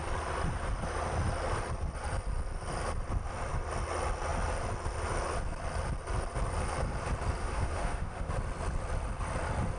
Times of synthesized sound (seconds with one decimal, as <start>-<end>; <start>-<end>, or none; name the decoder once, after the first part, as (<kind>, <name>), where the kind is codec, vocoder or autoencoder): 7.4-8.3 (autoencoder, DAC-VAE)